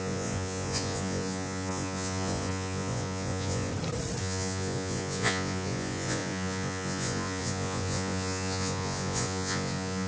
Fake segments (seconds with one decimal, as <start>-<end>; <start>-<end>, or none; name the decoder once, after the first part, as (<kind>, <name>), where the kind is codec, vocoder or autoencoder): 0.0-3.7 (vocoder, Vocos); 4.2-10.1